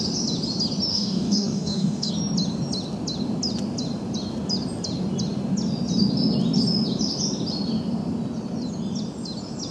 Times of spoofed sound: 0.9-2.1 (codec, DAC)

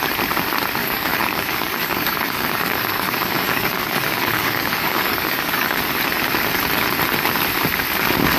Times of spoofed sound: 0.8-5.8 (codec, DAC)

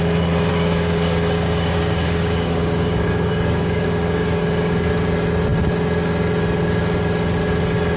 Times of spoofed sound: 0.5-4.9 (codec, DAC)